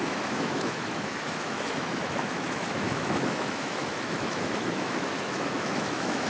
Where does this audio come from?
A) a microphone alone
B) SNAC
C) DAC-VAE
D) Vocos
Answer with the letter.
C